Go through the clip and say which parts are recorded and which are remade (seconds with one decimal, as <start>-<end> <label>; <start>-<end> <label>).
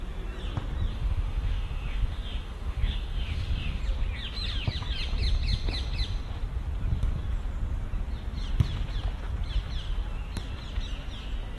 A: 0.0-0.9 recorded; 0.9-3.8 remade; 3.8-11.6 recorded